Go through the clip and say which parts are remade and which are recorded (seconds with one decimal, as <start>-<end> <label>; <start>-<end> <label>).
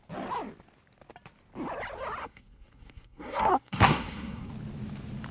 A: 0.0-2.2 recorded; 2.2-4.5 remade; 4.5-5.3 recorded